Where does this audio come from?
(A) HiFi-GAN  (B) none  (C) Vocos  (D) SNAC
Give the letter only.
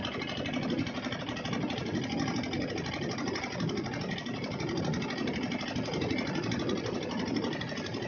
B